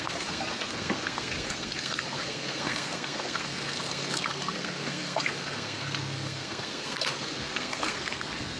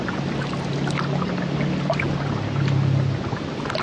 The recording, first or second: second